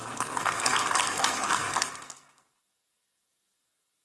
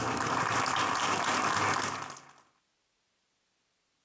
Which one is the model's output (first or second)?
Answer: first